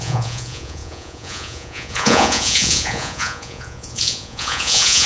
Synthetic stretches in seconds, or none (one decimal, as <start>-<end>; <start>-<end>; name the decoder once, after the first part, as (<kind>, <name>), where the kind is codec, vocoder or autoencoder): 0.0-5.1 (vocoder, Vocos)